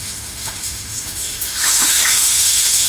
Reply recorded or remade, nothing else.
remade